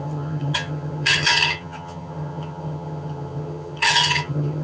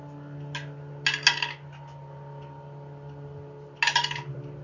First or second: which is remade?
first